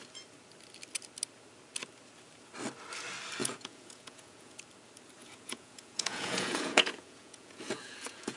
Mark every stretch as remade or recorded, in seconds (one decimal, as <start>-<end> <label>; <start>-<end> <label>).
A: 0.0-3.4 recorded; 3.4-4.6 remade; 4.6-5.2 recorded; 5.2-8.4 remade